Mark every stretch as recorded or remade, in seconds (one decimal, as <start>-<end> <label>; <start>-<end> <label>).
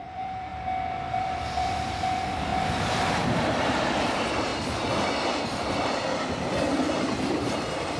0.0-0.5 remade; 0.5-1.2 recorded; 1.2-4.5 remade; 4.5-6.9 recorded; 6.9-8.0 remade